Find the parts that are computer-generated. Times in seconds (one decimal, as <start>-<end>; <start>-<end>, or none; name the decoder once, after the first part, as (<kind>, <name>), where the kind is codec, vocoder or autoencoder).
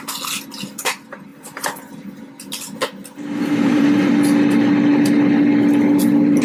1.3-1.9 (vocoder, BigVGAN v2); 3.4-4.1